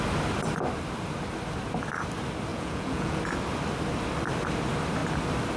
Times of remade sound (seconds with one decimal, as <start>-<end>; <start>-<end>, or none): 2.5-3.2